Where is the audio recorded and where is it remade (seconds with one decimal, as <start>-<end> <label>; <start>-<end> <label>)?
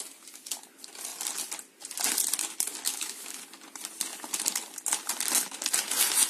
0.0-2.9 recorded; 2.9-3.4 remade; 3.4-6.3 recorded